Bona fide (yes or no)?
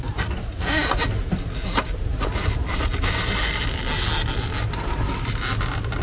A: yes